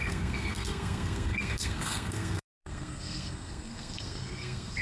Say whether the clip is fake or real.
fake